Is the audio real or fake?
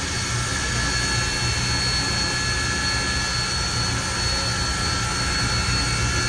real